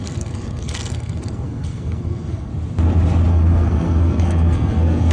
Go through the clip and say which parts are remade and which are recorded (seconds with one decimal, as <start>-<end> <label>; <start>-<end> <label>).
0.0-2.5 remade; 2.5-3.3 recorded; 3.3-5.1 remade